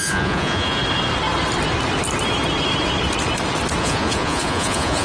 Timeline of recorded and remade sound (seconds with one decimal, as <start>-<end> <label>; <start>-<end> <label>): 0.0-0.8 remade; 0.8-3.8 recorded; 3.8-5.0 remade